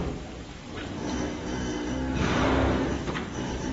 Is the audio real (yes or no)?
yes